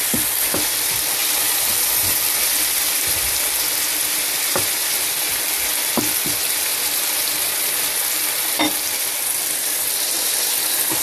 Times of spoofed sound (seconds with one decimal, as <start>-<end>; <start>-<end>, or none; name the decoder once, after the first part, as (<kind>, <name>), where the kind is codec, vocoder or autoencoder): 0.0-11.0 (vocoder, BigVGAN v2)